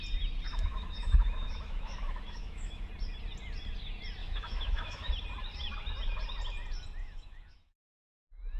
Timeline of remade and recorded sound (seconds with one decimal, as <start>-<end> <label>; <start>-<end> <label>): 0.0-0.5 recorded; 0.5-2.9 remade; 2.9-4.2 recorded; 4.2-5.1 remade; 5.1-7.0 recorded; 7.0-7.8 remade; 7.8-8.6 recorded